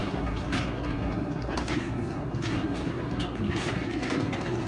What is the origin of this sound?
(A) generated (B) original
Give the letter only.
A